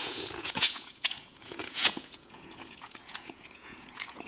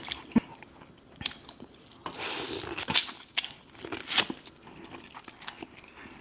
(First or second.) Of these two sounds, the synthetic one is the first